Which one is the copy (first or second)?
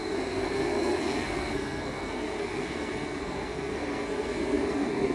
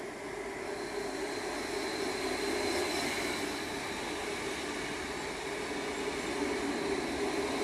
first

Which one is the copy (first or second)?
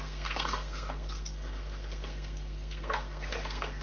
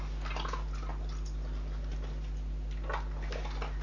first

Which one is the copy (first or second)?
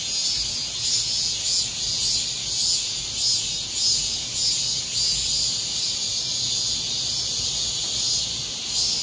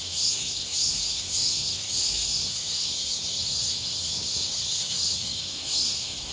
second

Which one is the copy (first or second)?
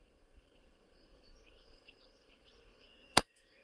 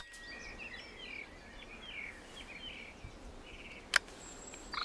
first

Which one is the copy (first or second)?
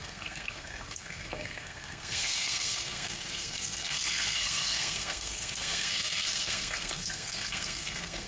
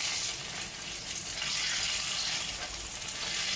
first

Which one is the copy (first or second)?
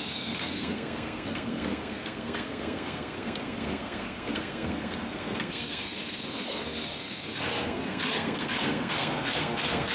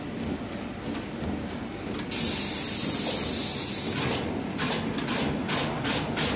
first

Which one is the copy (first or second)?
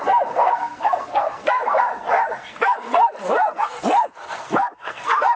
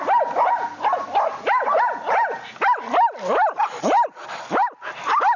first